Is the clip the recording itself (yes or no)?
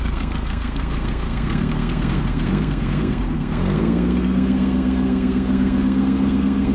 no